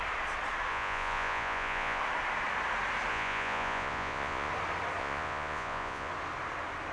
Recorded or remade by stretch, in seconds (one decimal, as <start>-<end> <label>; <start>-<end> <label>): 0.0-0.7 recorded; 0.7-2.0 remade; 2.0-3.1 recorded; 3.1-4.5 remade; 4.5-5.0 recorded; 5.0-6.1 remade; 6.1-6.9 recorded